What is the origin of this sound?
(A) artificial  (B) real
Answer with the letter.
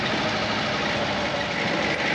B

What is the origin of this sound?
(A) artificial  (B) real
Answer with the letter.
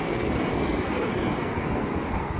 A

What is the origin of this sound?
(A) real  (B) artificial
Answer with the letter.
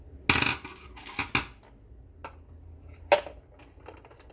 A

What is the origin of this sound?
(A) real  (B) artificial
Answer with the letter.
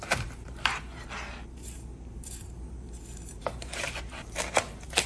B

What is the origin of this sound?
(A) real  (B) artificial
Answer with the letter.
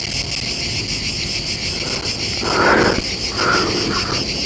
A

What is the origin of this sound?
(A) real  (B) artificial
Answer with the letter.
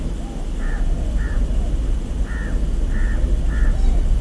A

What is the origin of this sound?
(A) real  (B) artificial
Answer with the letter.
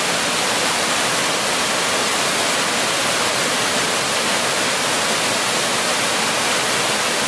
A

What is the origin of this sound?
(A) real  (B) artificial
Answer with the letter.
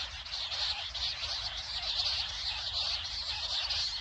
A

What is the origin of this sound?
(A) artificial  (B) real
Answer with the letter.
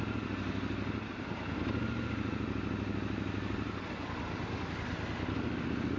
B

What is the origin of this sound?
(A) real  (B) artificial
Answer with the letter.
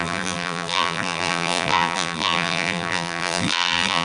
B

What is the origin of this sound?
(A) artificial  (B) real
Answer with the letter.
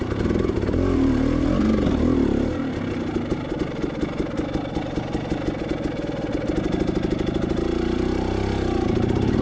B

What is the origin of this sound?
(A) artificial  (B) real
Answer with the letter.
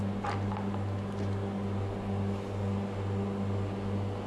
B